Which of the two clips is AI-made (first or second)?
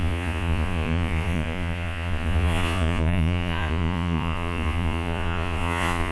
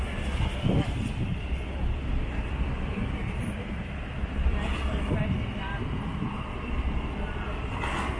first